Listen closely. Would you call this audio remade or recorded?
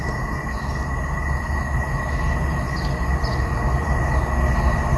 recorded